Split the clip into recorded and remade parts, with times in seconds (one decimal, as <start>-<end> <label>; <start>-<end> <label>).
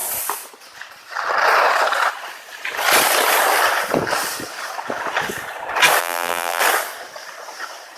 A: 0.0-6.0 recorded; 6.0-6.6 remade; 6.6-8.0 recorded